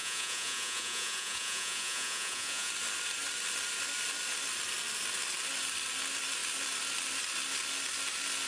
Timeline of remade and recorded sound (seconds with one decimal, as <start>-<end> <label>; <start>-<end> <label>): 0.0-2.7 remade; 2.7-8.5 recorded